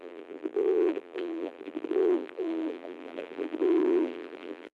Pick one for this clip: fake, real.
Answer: fake